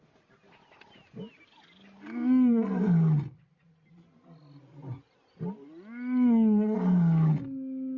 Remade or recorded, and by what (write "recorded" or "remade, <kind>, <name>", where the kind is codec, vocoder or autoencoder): recorded